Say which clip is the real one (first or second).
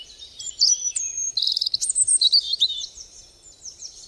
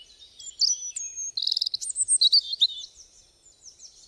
second